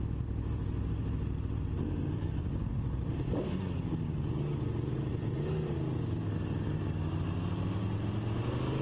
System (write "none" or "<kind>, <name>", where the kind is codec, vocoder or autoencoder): none